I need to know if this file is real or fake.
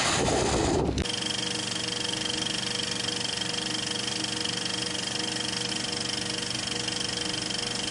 real